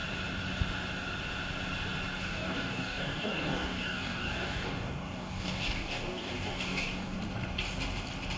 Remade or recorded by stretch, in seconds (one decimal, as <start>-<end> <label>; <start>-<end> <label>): 0.0-2.2 recorded; 2.2-7.2 remade; 7.2-8.4 recorded